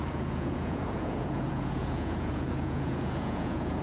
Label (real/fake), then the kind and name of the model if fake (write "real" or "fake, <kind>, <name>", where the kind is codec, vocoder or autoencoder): fake, vocoder, Vocos